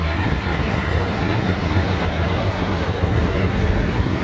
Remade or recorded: remade